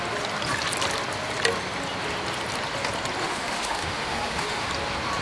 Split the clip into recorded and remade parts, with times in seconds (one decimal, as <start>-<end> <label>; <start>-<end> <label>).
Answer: 0.0-3.2 recorded; 3.2-4.7 remade; 4.7-5.2 recorded